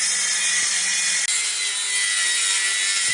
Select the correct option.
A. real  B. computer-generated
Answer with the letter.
A